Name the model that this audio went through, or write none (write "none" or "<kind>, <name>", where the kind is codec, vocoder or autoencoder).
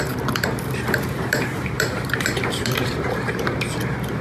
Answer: vocoder, BigVGAN v2